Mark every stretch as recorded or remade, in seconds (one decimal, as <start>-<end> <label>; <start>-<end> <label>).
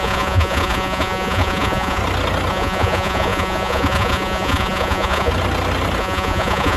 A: 0.0-2.0 remade; 2.0-2.5 recorded; 2.5-5.3 remade; 5.3-6.0 recorded; 6.0-6.8 remade